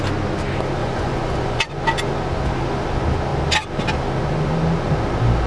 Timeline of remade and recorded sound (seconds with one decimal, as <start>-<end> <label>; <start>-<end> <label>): 0.0-0.8 recorded; 0.8-1.6 remade; 1.6-5.5 recorded